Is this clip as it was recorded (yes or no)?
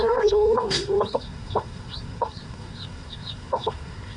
no